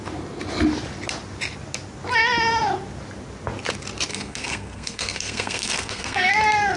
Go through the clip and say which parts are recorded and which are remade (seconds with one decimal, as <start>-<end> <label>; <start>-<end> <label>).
0.0-4.1 recorded; 4.1-6.3 remade; 6.3-6.8 recorded